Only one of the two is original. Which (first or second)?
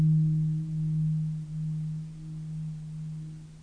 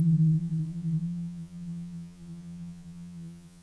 first